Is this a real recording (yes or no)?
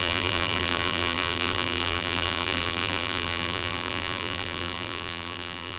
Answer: no